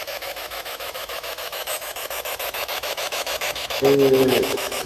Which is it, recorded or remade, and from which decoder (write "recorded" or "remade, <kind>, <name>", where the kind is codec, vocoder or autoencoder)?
remade, autoencoder, DAC-VAE